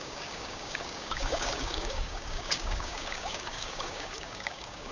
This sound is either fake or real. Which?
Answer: fake